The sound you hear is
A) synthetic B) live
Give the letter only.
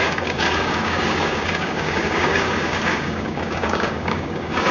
A